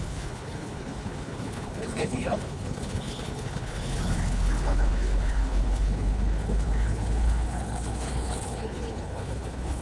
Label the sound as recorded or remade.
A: remade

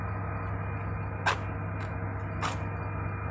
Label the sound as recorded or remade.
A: recorded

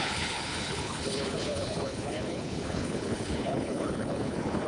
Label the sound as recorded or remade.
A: remade